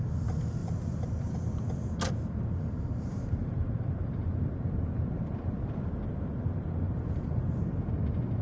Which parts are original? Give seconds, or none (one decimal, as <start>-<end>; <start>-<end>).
0.0-0.6; 1.3-3.4; 7.6-8.4